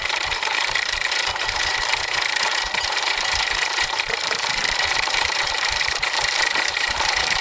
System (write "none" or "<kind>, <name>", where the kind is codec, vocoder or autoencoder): vocoder, BigVGAN v2